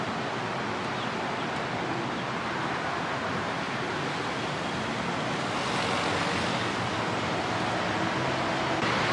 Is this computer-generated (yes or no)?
no